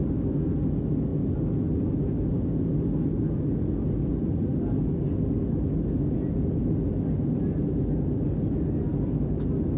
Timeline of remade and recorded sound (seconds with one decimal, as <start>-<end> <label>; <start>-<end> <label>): 0.0-9.8 recorded